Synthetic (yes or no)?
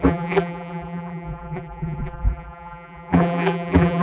yes